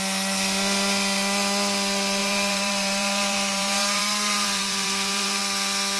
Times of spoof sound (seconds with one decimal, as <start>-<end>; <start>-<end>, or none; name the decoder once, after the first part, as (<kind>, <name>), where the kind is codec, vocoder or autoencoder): 2.2-5.4 (vocoder, BigVGAN v2)